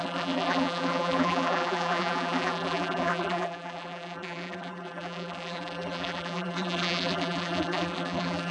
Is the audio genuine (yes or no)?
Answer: no